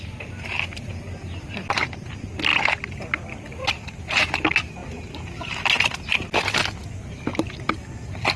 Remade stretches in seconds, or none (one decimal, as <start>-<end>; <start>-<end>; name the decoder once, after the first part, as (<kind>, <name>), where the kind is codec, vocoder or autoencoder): none